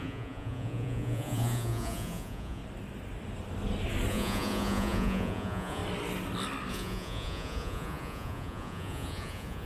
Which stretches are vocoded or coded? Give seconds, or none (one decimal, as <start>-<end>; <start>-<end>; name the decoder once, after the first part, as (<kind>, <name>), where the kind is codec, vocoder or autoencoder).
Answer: 0.0-2.6 (vocoder, Vocos); 4.1-5.8; 6.7-9.7